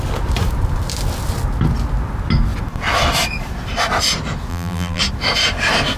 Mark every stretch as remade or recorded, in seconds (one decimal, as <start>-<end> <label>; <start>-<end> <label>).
0.0-4.5 recorded; 4.5-5.0 remade; 5.0-6.0 recorded